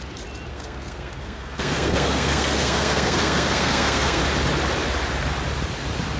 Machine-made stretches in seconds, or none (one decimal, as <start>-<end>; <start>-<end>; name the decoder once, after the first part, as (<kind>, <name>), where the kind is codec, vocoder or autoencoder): 0.5-4.2 (codec, SNAC)